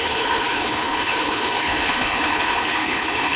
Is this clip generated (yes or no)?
yes